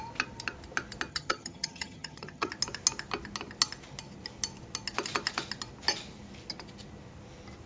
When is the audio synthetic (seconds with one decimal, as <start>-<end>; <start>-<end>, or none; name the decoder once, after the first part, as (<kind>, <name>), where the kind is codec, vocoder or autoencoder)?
1.1-2.5 (vocoder, HiFi-GAN)